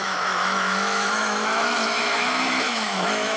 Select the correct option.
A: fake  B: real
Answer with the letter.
A